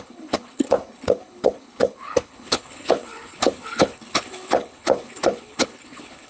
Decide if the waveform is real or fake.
fake